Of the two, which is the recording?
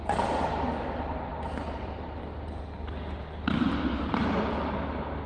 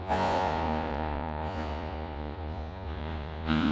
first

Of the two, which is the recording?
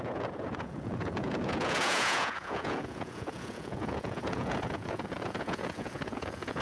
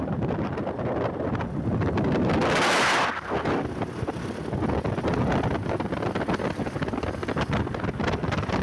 second